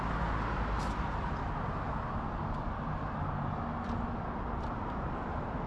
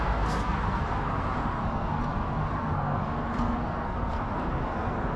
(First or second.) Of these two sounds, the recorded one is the first